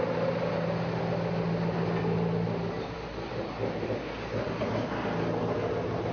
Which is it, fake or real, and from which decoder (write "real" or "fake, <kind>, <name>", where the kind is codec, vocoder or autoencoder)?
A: real